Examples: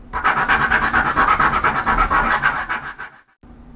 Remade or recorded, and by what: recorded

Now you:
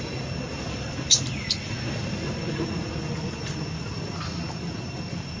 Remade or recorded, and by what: recorded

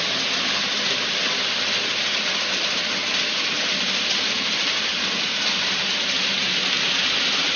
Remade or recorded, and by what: remade, vocoder, BigVGAN v2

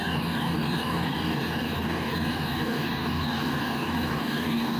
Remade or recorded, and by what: remade, codec, DAC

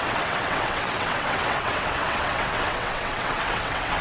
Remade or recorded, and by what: remade, vocoder, WaveNeXt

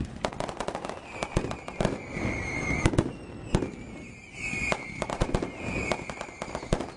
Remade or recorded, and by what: recorded